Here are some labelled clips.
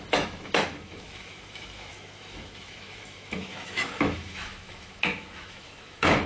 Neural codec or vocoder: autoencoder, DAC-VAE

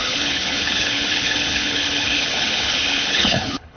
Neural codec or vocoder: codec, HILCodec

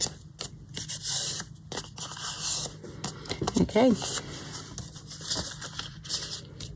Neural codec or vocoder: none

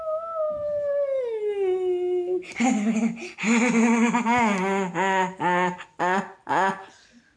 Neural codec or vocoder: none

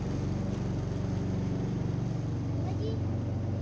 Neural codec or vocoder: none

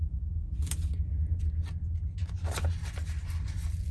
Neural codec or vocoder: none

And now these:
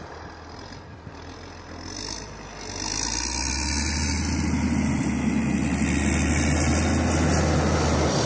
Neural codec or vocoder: none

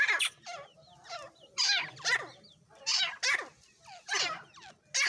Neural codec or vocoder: none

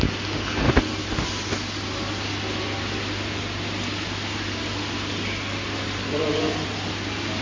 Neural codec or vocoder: none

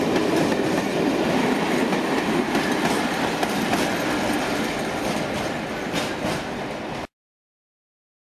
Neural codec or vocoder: none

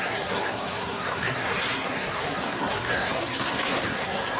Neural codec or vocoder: codec, SNAC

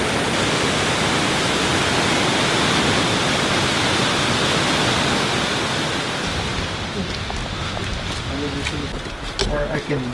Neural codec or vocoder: none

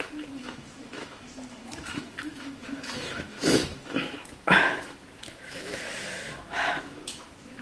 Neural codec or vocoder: autoencoder, DAC-VAE